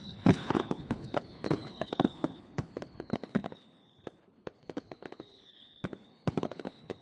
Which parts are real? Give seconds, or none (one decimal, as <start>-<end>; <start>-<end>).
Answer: none